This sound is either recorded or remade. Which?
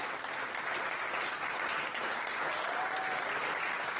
recorded